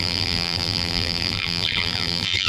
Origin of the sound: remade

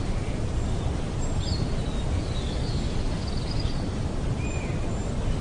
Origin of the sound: recorded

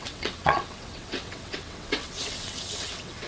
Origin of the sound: remade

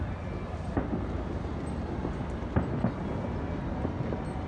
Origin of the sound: recorded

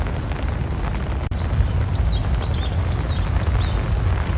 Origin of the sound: recorded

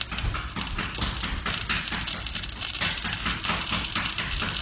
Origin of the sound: recorded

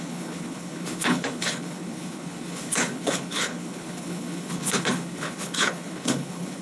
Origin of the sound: remade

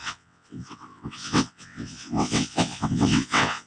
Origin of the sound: remade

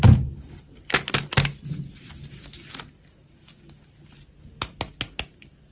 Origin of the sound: recorded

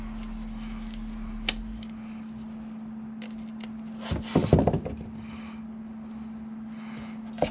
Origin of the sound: recorded